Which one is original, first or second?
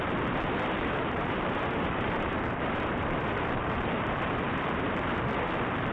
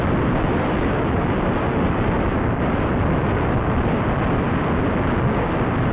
second